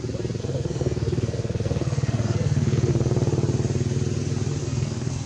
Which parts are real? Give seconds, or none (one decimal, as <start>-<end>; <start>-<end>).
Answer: 0.0-0.4; 2.9-4.6

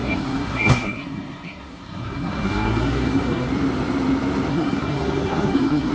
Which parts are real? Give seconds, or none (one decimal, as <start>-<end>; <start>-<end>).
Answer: 3.5-4.5

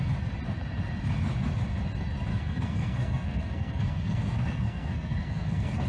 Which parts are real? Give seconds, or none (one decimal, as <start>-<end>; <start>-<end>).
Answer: 0.0-2.3

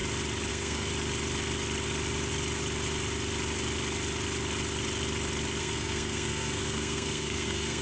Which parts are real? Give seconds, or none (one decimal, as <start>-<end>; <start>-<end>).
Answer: 0.0-0.5; 0.9-5.6

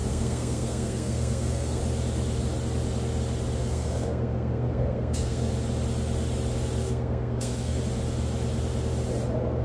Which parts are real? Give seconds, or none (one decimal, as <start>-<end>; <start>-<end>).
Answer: 1.8-3.6; 5.5-6.8; 7.8-9.6

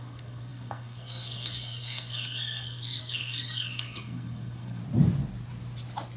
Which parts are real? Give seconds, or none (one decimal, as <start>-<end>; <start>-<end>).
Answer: 4.8-6.2